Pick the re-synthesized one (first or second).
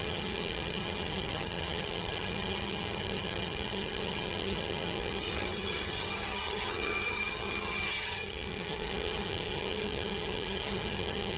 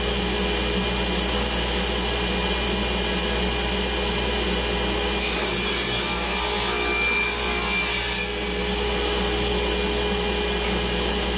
first